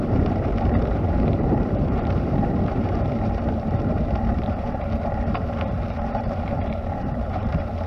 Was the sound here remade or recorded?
remade